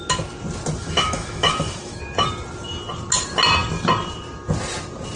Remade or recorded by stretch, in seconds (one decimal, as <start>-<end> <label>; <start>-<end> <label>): 0.0-0.8 recorded; 0.8-2.0 remade; 2.0-5.2 recorded